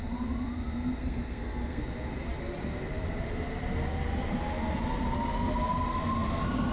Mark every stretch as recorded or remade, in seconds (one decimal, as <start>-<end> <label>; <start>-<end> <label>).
0.0-1.0 recorded; 1.0-1.8 remade; 1.8-6.7 recorded